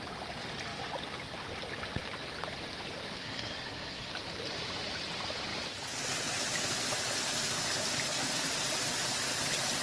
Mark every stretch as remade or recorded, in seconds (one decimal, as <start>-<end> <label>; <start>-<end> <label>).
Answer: 0.0-3.2 recorded; 3.2-4.1 remade; 4.1-9.8 recorded